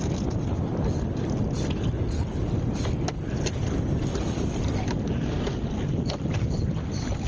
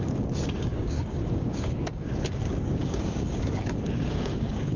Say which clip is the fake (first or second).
second